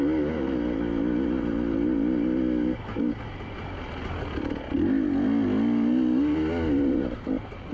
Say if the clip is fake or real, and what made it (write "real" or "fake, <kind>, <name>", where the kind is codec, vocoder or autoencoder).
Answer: real